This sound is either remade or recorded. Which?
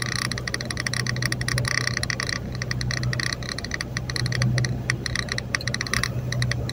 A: recorded